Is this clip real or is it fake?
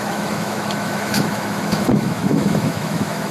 fake